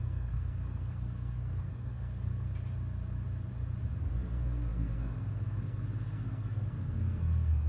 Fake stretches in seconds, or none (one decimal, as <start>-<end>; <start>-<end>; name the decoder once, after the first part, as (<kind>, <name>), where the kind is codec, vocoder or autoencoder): 0.0-2.5 (codec, SNAC); 4.0-7.7